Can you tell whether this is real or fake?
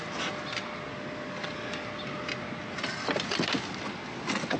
real